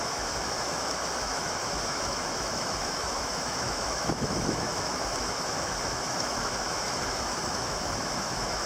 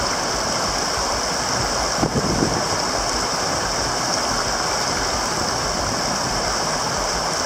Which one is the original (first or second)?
second